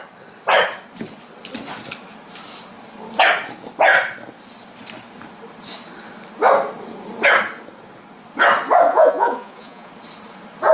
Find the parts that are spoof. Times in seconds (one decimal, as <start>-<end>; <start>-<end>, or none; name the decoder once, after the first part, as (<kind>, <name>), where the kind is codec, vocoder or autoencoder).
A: 8.9-9.9 (vocoder, Vocos)